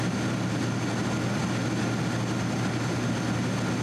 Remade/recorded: recorded